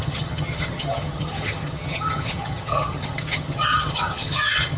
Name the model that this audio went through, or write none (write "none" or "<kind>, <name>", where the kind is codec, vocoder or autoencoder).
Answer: vocoder, HiFi-GAN